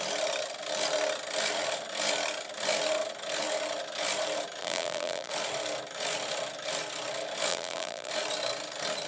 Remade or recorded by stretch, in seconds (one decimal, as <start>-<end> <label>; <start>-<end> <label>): 0.0-4.6 recorded; 4.6-5.3 remade; 5.3-7.5 recorded; 7.5-8.1 remade; 8.1-9.1 recorded